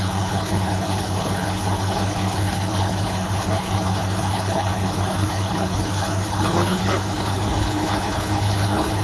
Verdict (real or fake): fake